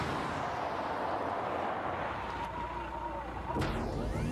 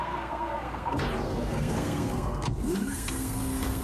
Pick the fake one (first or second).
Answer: second